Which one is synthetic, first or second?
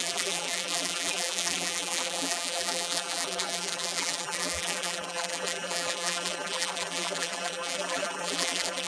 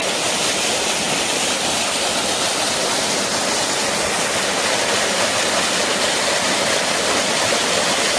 first